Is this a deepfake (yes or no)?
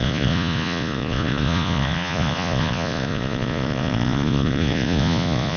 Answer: yes